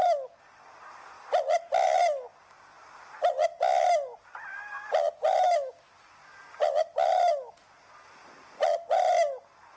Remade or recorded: recorded